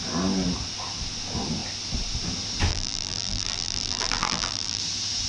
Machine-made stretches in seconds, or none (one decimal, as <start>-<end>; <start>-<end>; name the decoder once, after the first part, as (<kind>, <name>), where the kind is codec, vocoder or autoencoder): 2.7-4.8 (vocoder, BigVGAN v2)